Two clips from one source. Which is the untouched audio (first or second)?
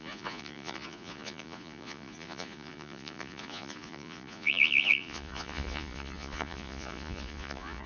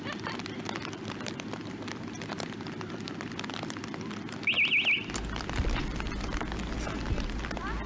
second